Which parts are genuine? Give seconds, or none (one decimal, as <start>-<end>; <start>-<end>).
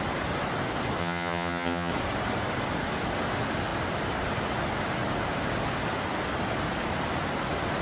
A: 0.0-1.0; 1.9-7.8